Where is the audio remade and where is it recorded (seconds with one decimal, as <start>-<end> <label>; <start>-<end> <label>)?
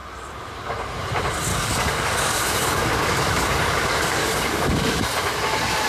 0.0-1.5 recorded; 1.5-5.0 remade; 5.0-5.9 recorded